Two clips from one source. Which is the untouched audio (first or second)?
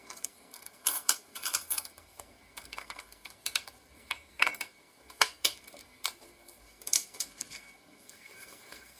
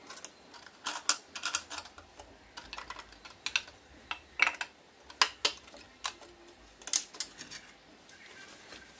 second